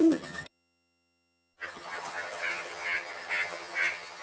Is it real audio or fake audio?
fake